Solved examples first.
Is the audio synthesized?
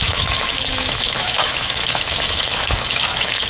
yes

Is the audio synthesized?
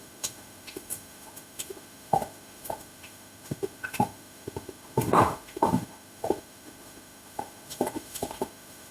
yes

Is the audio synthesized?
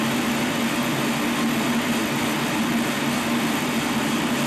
no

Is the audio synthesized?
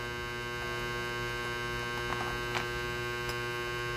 no